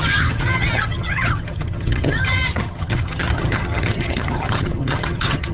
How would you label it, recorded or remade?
remade